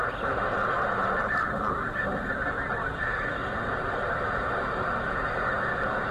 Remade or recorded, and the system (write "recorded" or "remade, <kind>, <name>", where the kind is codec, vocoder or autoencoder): remade, vocoder, BigVGAN v2